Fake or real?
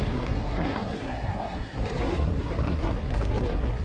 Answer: fake